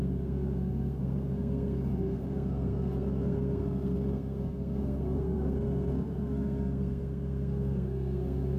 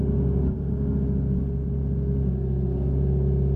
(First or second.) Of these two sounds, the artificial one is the first